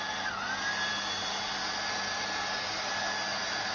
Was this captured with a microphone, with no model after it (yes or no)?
yes